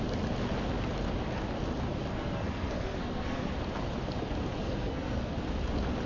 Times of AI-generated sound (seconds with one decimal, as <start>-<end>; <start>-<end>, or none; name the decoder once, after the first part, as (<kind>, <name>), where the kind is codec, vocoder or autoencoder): 2.1-3.5 (codec, SNAC); 4.6-5.3